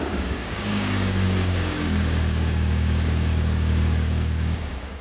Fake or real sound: fake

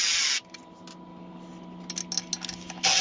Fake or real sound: real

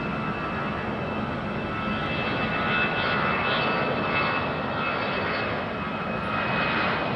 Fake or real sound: real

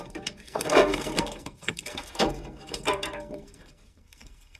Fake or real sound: fake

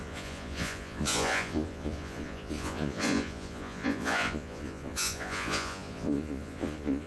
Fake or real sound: fake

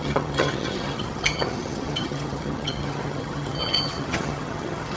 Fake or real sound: fake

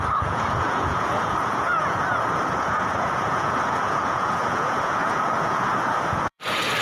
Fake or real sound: fake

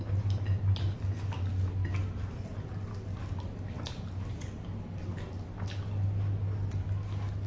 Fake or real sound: real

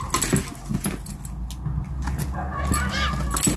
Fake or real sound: real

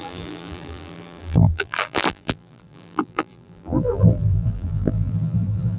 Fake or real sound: fake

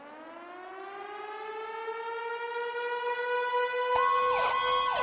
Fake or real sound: real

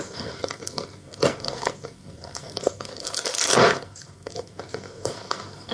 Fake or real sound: fake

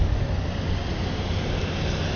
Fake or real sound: real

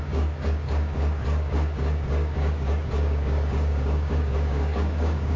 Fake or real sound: fake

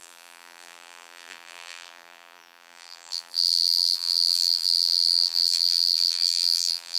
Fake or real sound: fake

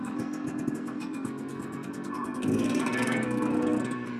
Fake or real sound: fake